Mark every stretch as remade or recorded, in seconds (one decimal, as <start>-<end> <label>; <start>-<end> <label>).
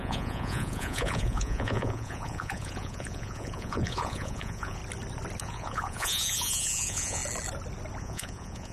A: 0.0-4.8 remade; 4.8-5.4 recorded; 5.4-7.2 remade; 7.2-8.0 recorded; 8.0-8.7 remade